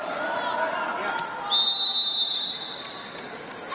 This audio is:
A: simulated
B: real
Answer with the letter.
B